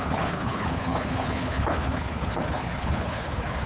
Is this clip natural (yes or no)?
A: no